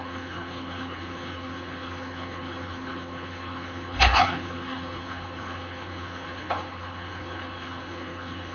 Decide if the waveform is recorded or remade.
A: remade